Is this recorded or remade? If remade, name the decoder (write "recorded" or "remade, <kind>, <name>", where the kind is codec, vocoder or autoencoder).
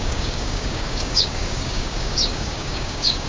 remade, codec, DAC